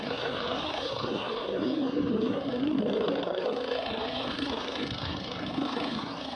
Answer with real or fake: fake